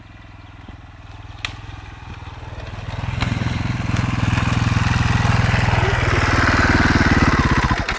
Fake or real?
real